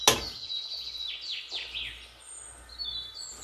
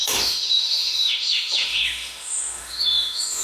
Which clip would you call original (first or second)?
first